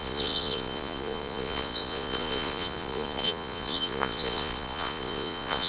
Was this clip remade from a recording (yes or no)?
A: yes